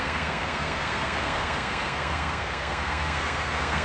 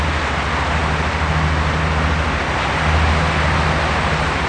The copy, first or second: first